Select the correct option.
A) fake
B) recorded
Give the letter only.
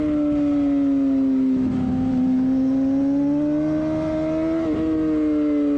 B